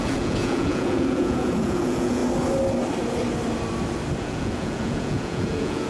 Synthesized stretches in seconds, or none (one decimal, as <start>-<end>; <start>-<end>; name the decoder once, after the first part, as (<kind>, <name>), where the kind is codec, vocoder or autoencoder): 0.0-2.2 (vocoder, Vocos); 4.2-5.9